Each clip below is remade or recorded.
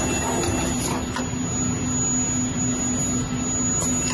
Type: recorded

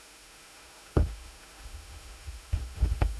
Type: remade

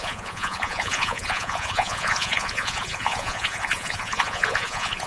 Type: remade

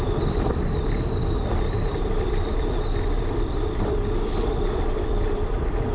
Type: remade